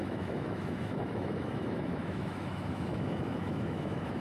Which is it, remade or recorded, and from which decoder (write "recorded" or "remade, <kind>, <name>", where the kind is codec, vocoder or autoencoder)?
remade, autoencoder, DAC-VAE